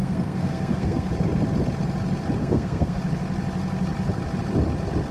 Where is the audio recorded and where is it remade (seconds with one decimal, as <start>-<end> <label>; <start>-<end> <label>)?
0.0-1.1 remade; 1.1-2.4 recorded; 2.4-3.0 remade; 3.0-5.1 recorded

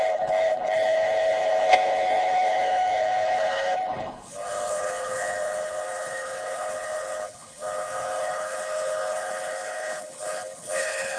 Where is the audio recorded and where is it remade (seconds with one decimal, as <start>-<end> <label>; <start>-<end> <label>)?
0.0-11.2 remade